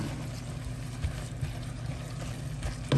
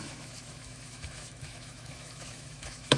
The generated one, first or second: second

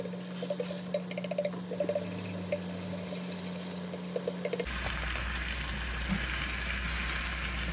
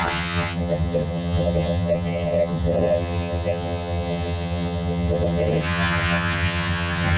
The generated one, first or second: second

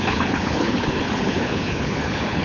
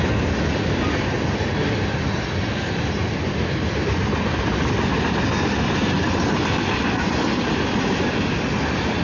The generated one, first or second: first